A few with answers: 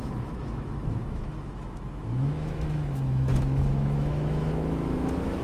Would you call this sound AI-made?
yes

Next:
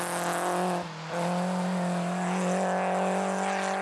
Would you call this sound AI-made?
no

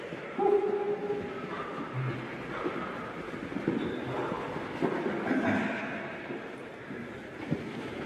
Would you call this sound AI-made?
no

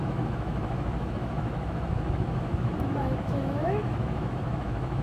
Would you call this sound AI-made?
yes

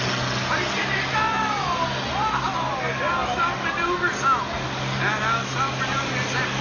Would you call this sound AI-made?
no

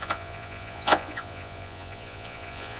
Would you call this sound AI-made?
yes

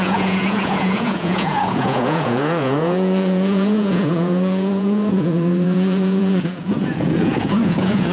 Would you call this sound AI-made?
yes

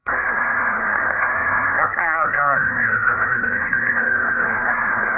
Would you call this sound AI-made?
yes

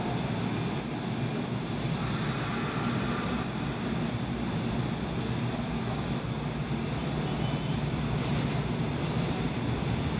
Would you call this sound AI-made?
no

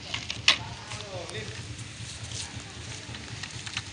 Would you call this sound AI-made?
no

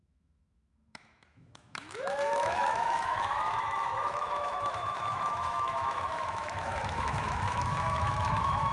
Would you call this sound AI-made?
yes